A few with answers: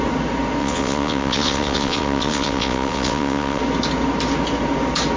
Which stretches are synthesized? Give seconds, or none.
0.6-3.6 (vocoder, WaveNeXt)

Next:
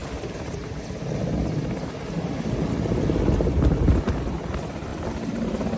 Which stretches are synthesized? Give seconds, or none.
none

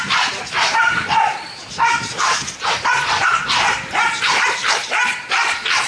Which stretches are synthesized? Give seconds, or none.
0.0-5.9 (vocoder, BigVGAN v2)

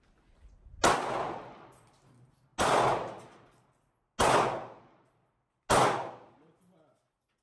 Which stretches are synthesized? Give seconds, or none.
none

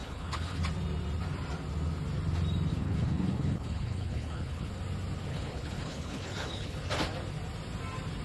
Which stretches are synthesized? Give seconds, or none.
0.0-0.6 (codec, HILCodec); 2.7-4.7; 5.3-6.8

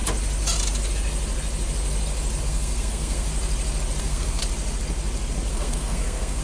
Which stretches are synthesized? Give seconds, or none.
2.4-3.3 (codec, SNAC); 4.0-4.4; 5.5-6.4

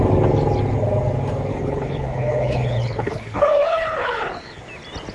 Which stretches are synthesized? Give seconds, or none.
1.5-4.6 (codec, HILCodec)

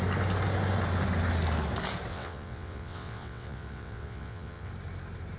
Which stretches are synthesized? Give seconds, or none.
2.1-4.7 (vocoder, WaveNeXt)